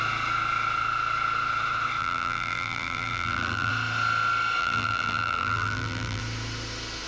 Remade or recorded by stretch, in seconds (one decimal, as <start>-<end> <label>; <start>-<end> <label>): 0.0-2.0 recorded; 2.0-3.7 remade; 3.7-4.6 recorded; 4.6-6.2 remade; 6.2-7.1 recorded